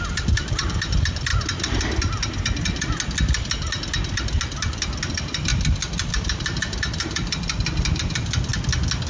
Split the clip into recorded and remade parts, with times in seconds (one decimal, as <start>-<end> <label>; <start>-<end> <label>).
0.0-1.3 remade; 1.3-5.1 recorded; 5.1-8.5 remade; 8.5-9.1 recorded

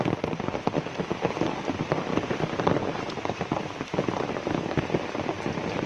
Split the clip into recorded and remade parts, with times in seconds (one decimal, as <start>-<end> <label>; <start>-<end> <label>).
0.0-2.1 recorded; 2.1-4.5 remade; 4.5-5.9 recorded

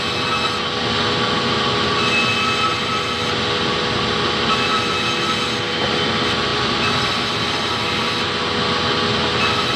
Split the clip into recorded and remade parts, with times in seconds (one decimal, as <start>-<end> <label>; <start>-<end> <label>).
0.0-2.7 recorded; 2.7-4.9 remade; 4.9-6.5 recorded; 6.5-7.5 remade; 7.5-9.8 recorded

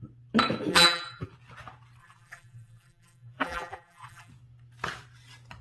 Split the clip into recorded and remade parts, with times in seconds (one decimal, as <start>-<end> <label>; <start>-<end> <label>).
0.0-0.7 recorded; 0.7-1.3 remade; 1.3-2.0 recorded; 2.0-4.3 remade; 4.3-5.6 recorded

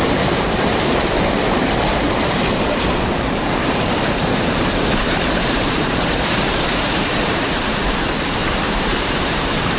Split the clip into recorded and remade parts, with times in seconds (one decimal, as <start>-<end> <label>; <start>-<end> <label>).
0.0-9.8 remade

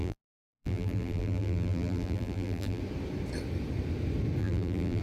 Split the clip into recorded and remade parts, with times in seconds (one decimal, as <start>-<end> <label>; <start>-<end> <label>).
0.0-2.8 remade; 2.8-4.4 recorded; 4.4-5.0 remade